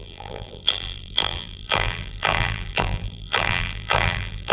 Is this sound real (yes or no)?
no